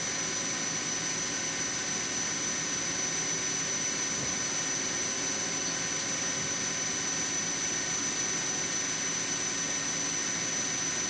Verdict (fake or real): real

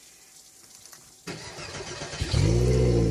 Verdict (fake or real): real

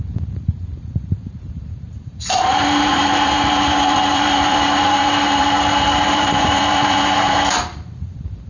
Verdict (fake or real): fake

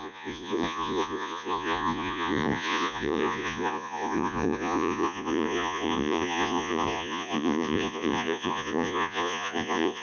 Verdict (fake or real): fake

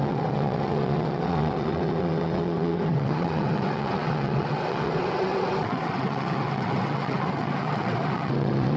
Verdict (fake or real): fake